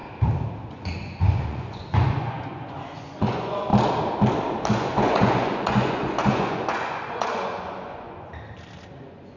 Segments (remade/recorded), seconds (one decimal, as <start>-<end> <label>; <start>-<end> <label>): 0.0-0.7 recorded; 0.7-3.7 remade; 3.7-4.7 recorded; 4.7-8.3 remade; 8.3-9.0 recorded; 9.0-9.4 remade